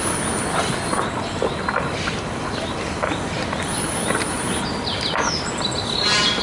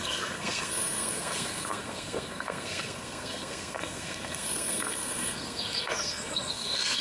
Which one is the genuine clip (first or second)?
first